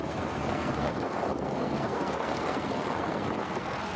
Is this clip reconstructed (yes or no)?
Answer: yes